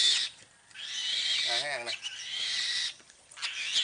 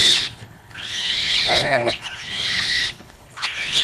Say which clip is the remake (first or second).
second